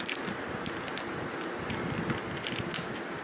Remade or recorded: recorded